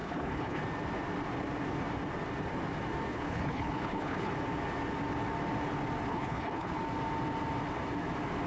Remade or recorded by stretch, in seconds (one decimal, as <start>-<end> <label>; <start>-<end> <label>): 0.0-0.6 remade; 0.6-3.1 recorded; 3.1-4.3 remade; 4.3-6.1 recorded; 6.1-6.8 remade; 6.8-8.5 recorded